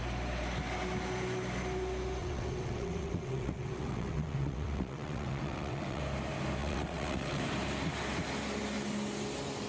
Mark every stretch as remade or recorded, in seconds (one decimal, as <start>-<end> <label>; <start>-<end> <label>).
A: 0.0-2.2 recorded; 2.2-6.0 remade; 6.0-6.6 recorded; 6.6-7.4 remade; 7.4-9.7 recorded